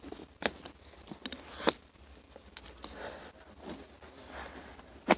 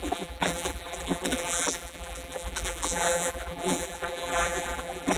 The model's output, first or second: second